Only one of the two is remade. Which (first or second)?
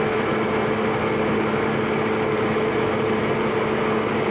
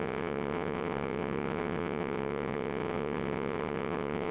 second